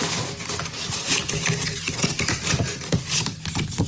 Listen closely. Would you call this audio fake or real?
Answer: real